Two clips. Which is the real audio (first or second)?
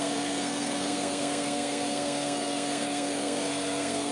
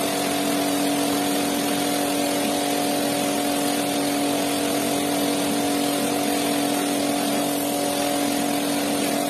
second